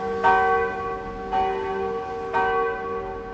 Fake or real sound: real